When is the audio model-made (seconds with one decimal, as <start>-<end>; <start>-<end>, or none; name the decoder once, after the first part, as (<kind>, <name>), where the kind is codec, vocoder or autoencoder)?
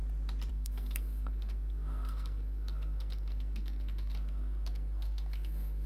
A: 0.5-5.9 (codec, SNAC)